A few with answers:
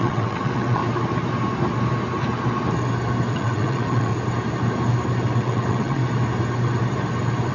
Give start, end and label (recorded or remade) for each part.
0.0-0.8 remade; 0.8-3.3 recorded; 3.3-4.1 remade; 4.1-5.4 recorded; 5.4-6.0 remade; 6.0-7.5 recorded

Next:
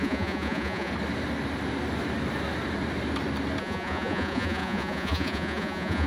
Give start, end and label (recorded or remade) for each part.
0.0-0.9 remade; 0.9-3.6 recorded; 3.6-6.1 remade

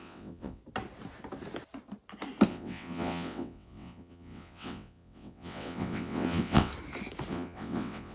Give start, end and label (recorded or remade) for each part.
0.0-0.6 remade; 0.6-2.5 recorded; 2.5-6.7 remade; 6.7-7.3 recorded; 7.3-8.1 remade

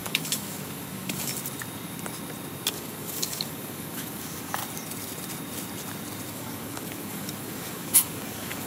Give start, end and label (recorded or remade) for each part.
0.0-1.3 remade; 1.3-2.7 recorded; 2.7-4.6 remade; 4.6-6.3 recorded; 6.3-8.7 remade

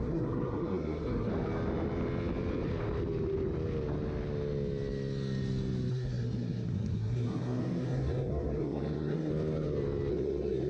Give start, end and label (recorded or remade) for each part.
0.0-1.3 remade; 1.3-5.9 recorded; 5.9-9.3 remade; 9.3-10.1 recorded; 10.1-10.7 remade

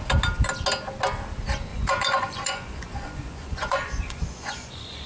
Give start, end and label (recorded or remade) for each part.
0.0-1.7 recorded; 1.7-5.1 remade